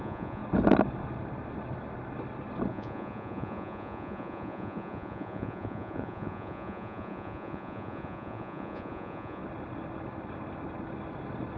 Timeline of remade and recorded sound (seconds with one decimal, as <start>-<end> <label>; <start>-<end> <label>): 0.0-0.4 remade; 0.4-2.7 recorded; 2.7-9.4 remade; 9.4-11.6 recorded